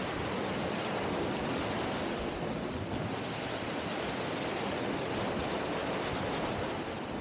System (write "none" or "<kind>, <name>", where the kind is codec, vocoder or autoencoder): none